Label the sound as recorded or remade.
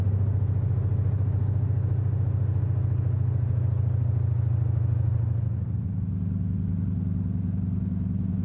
recorded